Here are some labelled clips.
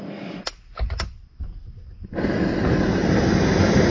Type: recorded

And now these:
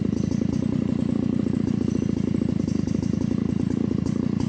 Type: recorded